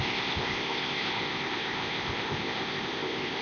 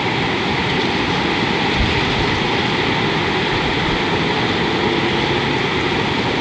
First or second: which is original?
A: second